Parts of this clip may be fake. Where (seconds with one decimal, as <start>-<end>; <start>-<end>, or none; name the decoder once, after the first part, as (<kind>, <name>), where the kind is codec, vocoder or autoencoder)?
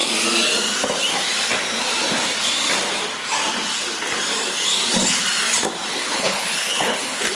6.0-7.3 (codec, HILCodec)